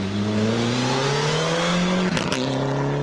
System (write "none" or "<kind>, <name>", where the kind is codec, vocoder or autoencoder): none